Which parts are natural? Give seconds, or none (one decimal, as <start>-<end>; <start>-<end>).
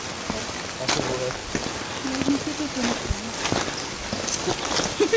0.0-5.2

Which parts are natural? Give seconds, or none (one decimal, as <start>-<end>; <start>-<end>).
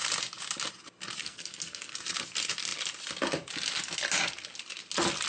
0.0-1.2; 2.0-5.3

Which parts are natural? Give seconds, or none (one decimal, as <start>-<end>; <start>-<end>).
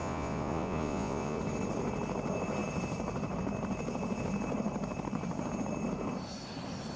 1.4-7.0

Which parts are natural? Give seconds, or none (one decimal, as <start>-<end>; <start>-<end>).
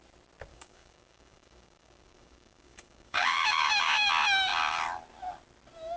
0.0-0.5; 4.1-6.0